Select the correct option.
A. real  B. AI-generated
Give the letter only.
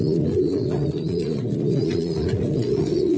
B